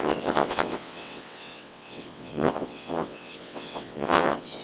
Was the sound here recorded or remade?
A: remade